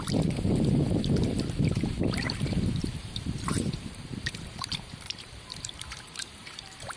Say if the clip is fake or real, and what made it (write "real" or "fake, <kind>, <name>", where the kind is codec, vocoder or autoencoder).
fake, vocoder, BigVGAN v2